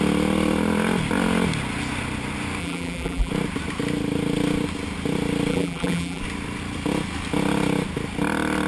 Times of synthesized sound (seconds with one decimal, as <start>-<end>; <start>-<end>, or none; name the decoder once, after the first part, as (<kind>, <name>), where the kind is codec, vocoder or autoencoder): 2.6-3.3 (vocoder, BigVGAN v2); 5.5-6.2